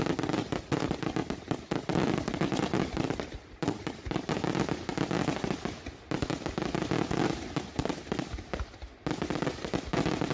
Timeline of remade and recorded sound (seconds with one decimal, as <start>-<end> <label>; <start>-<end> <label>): 0.0-10.3 recorded